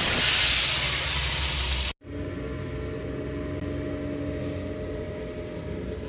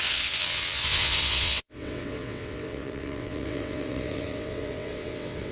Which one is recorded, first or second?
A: first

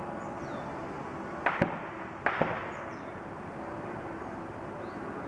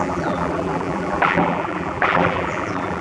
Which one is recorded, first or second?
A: first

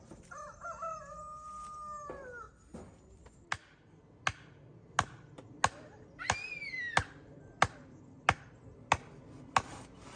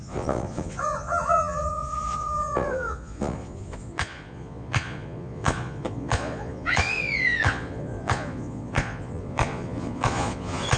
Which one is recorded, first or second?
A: first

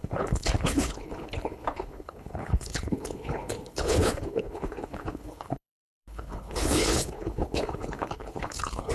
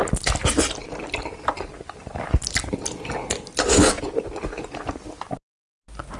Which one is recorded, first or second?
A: second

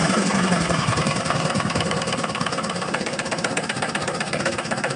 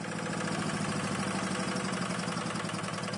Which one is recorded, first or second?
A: second